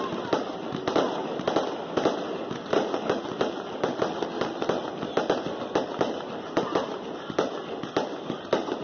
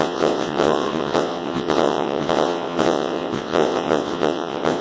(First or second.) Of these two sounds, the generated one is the second